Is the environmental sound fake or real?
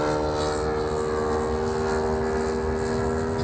real